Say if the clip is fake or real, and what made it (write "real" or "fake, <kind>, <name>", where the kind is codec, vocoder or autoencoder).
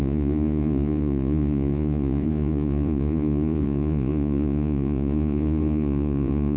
fake, vocoder, Vocos